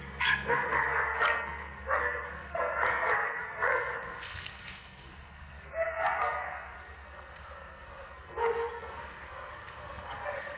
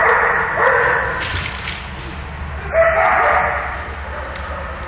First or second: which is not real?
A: first